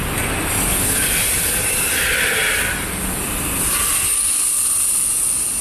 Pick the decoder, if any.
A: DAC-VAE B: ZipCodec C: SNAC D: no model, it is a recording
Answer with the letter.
D